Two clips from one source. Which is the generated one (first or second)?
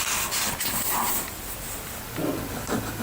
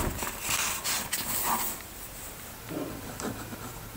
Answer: second